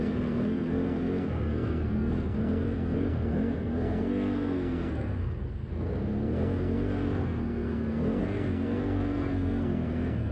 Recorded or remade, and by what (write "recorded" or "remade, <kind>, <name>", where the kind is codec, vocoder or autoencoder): remade, codec, SNAC